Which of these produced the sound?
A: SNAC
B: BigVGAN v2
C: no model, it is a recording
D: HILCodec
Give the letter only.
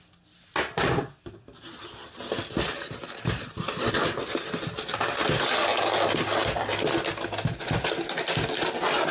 C